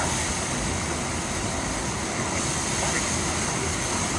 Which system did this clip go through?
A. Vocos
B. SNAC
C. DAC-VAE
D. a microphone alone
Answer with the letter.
D